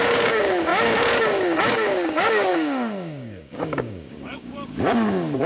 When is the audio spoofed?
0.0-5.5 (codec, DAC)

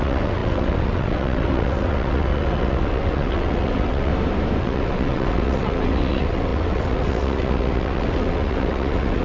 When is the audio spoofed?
0.0-4.1 (vocoder, WaveNeXt); 4.6-9.2

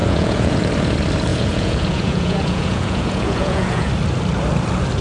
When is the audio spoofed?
0.0-0.6 (vocoder, Vocos); 1.3-3.9

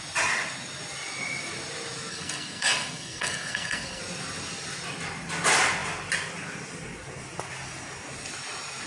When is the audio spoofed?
2.1-4.0 (codec, SNAC)

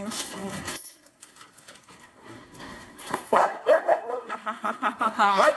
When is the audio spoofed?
0.0-5.6 (codec, SNAC)

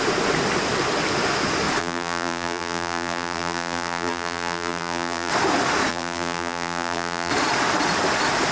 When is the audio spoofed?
1.8-5.3 (vocoder, BigVGAN v2); 5.9-7.3

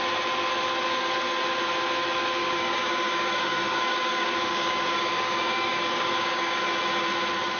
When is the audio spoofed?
2.4-6.6 (codec, DAC)

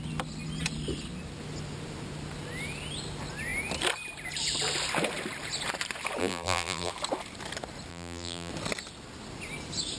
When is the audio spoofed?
6.2-6.9 (vocoder, BigVGAN v2); 7.9-8.5